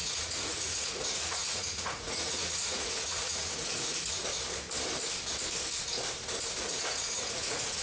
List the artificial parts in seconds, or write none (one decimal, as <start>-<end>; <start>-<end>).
0.0-4.2; 6.6-7.8